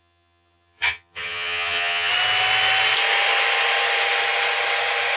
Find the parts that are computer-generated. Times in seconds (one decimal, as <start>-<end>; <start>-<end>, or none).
0.0-2.1